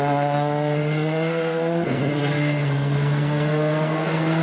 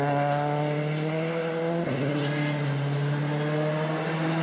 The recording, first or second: second